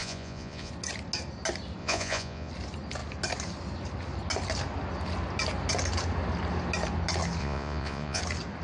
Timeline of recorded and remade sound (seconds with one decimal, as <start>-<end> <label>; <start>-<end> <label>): 0.0-0.7 remade; 0.7-1.8 recorded; 1.8-2.5 remade; 2.5-7.4 recorded; 7.4-8.2 remade; 8.2-8.6 recorded